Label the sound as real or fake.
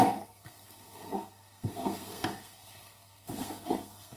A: fake